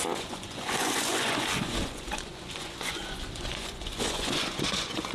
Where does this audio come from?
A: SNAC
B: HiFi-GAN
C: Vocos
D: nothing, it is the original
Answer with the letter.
C